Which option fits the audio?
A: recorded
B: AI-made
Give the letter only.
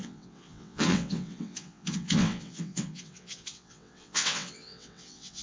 B